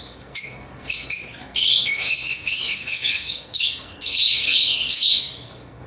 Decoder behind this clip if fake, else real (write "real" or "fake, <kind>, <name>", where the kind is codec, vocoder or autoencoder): fake, codec, SNAC